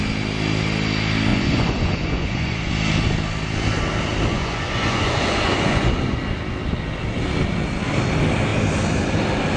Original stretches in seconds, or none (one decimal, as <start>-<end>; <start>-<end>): 0.0-1.3; 2.7-4.3; 6.2-9.6